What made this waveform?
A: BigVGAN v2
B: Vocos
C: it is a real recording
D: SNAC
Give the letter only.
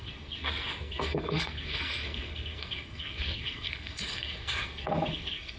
D